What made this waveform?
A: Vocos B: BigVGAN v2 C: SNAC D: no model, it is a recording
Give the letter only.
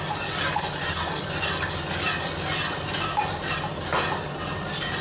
D